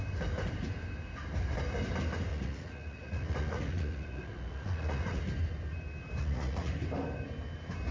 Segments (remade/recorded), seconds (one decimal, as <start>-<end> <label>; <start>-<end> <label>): 0.0-2.3 recorded; 2.3-5.2 remade; 5.2-6.2 recorded; 6.2-6.7 remade; 6.7-7.9 recorded